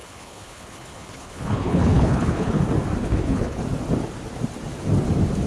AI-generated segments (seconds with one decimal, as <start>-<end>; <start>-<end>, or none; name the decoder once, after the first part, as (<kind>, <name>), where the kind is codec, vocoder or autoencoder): 0.0-2.6 (codec, HILCodec); 3.0-3.6